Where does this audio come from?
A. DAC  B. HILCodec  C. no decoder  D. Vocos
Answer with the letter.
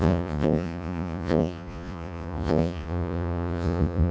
D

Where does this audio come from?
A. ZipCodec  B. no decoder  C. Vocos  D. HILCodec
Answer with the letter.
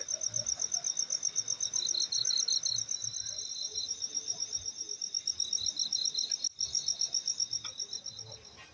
B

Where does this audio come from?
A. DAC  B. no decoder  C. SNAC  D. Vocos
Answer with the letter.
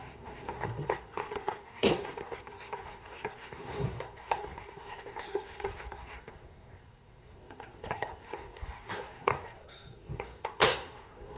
C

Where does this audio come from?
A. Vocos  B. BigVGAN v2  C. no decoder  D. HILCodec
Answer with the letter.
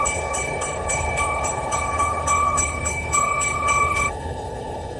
D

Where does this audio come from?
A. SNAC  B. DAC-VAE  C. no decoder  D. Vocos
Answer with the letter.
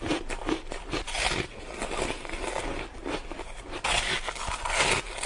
C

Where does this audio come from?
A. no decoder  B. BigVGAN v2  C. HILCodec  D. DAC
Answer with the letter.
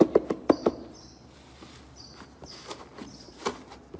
A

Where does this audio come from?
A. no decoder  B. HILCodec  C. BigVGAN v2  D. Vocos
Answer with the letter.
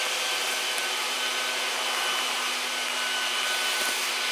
A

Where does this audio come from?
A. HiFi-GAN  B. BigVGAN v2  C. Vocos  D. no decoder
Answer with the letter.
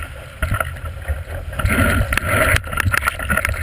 D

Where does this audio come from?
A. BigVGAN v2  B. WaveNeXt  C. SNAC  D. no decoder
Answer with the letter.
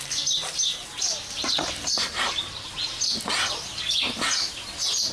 D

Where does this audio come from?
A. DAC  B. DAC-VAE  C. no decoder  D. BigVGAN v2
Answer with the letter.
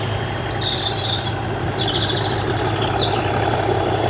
C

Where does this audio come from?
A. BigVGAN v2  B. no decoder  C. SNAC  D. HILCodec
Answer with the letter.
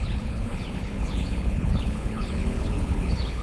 D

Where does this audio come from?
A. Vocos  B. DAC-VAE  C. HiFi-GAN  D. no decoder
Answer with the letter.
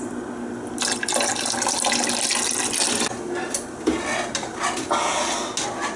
D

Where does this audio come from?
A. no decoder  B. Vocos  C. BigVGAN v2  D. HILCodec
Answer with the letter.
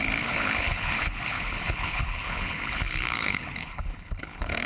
D